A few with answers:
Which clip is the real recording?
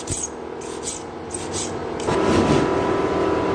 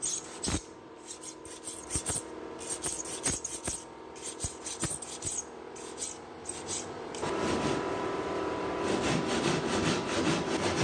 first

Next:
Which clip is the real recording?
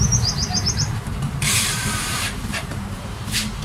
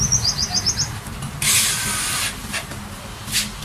second